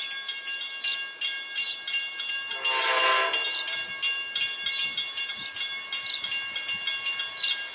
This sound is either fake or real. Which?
real